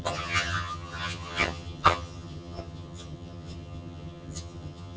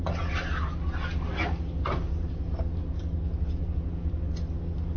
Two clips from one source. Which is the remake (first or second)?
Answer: first